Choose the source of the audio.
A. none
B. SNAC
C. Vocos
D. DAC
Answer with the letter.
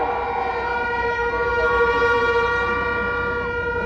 A